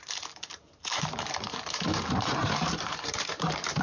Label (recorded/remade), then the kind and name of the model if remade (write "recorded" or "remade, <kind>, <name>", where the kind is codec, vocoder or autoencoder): remade, vocoder, BigVGAN v2